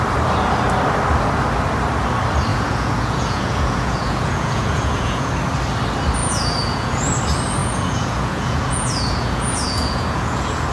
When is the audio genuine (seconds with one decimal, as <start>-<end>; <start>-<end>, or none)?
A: 0.0-2.5; 5.3-6.2; 7.1-7.6